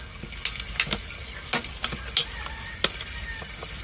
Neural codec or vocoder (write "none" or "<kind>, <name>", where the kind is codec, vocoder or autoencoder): none